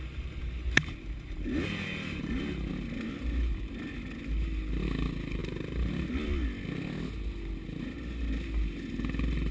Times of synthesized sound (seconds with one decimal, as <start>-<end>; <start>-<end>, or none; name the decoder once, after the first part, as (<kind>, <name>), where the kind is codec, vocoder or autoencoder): 0.0-2.7 (vocoder, BigVGAN v2); 5.4-5.9